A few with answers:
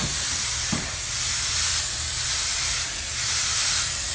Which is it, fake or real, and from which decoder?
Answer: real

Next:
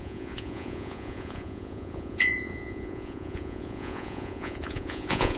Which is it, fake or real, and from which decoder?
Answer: fake, vocoder, Vocos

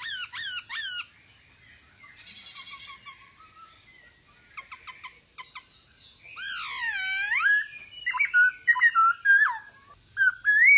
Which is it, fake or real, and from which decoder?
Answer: real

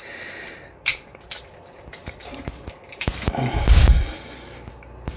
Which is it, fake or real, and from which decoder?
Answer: real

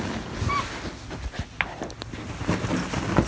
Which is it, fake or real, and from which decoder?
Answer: real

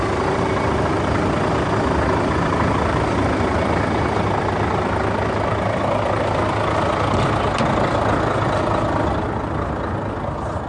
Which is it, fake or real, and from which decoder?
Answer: real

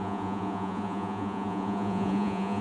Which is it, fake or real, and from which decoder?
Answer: fake, vocoder, Vocos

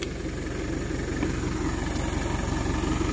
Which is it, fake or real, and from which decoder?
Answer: real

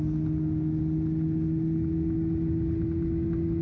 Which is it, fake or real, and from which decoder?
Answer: real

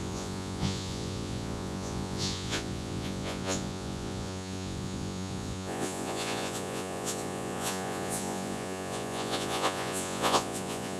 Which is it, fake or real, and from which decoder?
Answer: fake, vocoder, Vocos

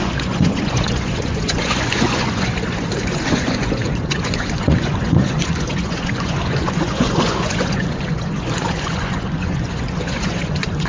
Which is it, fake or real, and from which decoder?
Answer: fake, vocoder, Vocos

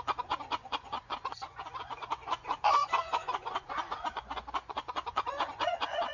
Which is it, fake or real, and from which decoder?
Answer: fake, vocoder, Vocos